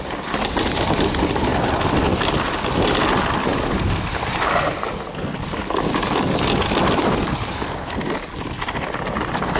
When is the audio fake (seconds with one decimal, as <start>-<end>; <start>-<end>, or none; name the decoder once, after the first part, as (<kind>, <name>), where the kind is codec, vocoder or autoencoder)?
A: none